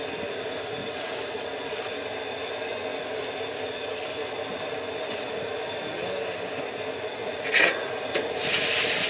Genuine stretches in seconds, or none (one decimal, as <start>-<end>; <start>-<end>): 0.0-0.8; 1.8-7.2; 8.1-9.1